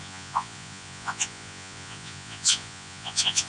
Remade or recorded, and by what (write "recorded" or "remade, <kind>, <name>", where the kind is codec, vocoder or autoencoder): remade, vocoder, Vocos